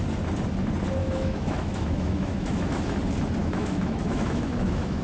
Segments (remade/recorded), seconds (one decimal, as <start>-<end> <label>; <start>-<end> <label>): 0.0-1.0 recorded; 1.0-2.8 remade; 2.8-3.4 recorded; 3.4-5.0 remade